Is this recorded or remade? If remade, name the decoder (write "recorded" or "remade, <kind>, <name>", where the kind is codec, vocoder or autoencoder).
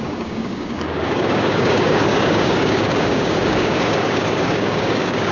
remade, codec, DAC